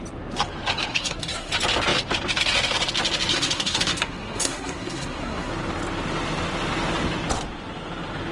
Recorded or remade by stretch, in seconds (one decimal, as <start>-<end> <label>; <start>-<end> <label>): 0.0-0.9 recorded; 0.9-1.5 remade; 1.5-3.3 recorded; 3.3-5.5 remade; 5.5-8.3 recorded

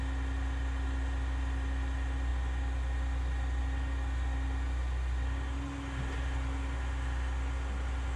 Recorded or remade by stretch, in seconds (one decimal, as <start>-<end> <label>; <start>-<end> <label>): 0.0-8.2 recorded